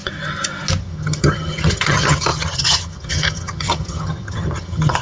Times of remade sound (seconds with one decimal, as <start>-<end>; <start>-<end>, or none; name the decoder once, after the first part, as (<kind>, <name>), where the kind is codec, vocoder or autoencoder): 0.8-5.0 (vocoder, HiFi-GAN)